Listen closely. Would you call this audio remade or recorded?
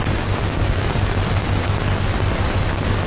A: recorded